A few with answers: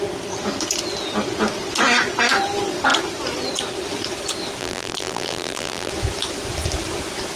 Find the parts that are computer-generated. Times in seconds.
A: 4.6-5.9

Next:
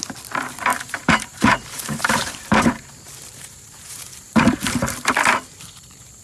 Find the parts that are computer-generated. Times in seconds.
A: 0.7-4.4